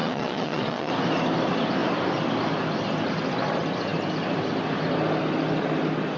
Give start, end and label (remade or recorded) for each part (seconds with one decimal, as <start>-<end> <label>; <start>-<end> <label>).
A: 0.0-0.9 remade; 0.9-6.2 recorded